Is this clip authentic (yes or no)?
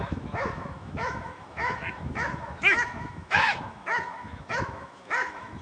no